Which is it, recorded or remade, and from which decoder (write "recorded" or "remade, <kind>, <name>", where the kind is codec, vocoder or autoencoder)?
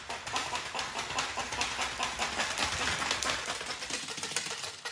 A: recorded